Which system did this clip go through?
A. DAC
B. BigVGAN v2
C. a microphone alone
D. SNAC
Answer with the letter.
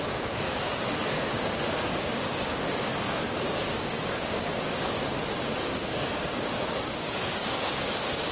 A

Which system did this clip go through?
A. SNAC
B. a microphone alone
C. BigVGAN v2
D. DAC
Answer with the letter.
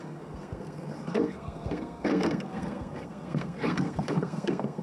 A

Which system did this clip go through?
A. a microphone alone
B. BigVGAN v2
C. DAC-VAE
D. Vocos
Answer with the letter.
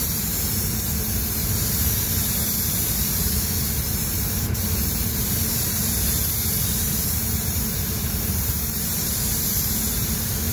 B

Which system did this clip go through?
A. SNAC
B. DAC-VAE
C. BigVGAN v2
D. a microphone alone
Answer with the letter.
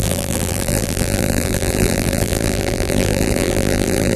C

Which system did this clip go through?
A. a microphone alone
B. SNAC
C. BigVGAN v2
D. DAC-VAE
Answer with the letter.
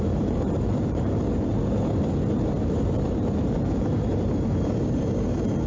A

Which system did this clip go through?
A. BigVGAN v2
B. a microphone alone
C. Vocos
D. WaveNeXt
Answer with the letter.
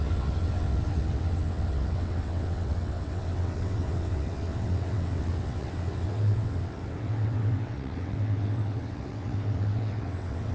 D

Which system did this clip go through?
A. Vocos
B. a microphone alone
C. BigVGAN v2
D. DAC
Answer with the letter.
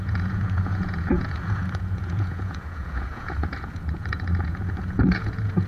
A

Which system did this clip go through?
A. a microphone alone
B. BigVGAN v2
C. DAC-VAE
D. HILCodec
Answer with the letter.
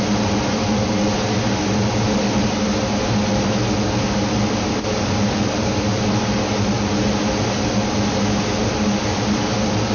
A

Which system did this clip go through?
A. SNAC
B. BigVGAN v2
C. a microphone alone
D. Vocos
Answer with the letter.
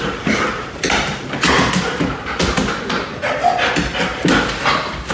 C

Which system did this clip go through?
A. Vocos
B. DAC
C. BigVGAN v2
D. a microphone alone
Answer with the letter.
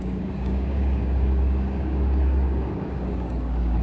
B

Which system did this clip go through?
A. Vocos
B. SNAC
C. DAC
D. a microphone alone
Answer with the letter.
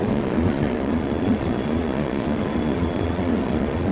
A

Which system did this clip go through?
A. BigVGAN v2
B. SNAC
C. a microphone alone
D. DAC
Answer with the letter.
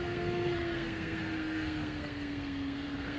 B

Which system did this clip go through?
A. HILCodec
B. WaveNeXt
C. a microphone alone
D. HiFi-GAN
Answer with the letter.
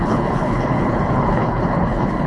A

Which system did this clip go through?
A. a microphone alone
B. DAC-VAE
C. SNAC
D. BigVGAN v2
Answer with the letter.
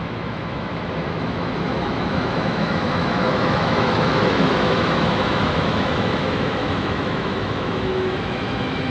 B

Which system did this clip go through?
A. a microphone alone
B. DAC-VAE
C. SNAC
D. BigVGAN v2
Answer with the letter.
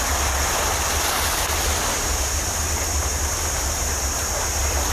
A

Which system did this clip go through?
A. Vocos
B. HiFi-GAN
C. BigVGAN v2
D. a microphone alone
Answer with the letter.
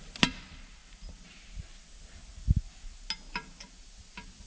D